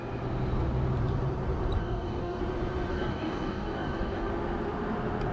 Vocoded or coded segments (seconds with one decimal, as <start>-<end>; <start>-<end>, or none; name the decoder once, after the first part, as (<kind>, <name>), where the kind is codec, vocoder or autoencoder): 1.8-2.4 (codec, DAC); 2.9-4.3